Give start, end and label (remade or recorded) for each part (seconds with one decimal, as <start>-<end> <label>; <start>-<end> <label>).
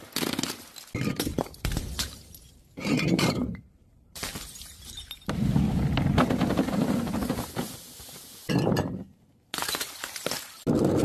0.0-1.3 recorded; 1.3-5.6 remade; 5.6-11.0 recorded